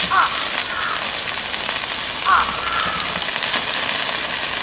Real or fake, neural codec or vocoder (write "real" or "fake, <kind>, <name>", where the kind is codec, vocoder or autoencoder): real